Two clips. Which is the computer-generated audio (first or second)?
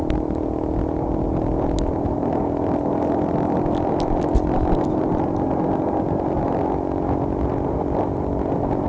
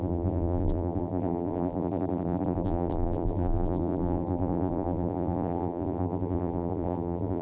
second